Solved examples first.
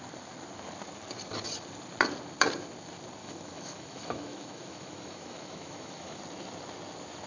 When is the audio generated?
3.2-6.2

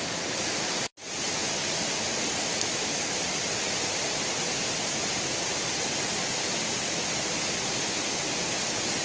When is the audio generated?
2.5-3.2

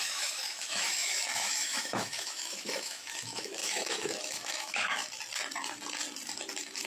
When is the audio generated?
0.0-5.0

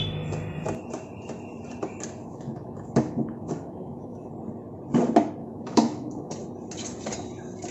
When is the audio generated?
2.2-4.3; 5.4-6.3

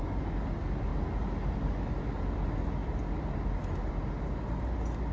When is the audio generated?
none

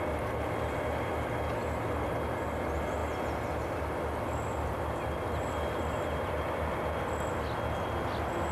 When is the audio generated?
none

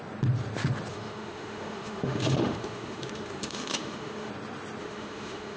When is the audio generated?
0.9-4.3; 4.8-5.6

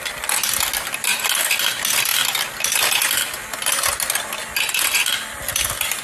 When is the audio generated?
none